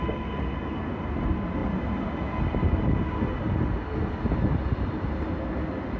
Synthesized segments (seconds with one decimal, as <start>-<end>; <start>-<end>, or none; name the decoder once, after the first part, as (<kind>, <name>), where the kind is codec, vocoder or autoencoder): none